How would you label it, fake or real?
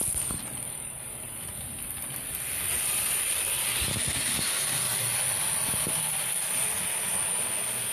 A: real